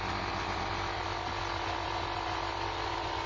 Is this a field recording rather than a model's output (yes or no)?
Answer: yes